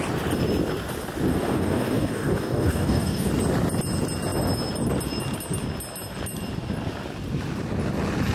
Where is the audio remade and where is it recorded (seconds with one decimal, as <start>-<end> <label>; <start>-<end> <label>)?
0.0-1.3 recorded; 1.3-3.3 remade; 3.3-8.3 recorded